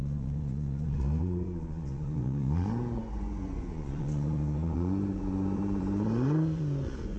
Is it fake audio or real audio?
fake